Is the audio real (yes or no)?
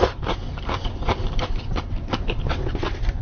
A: yes